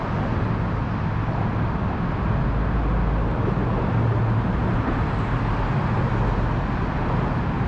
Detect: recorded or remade recorded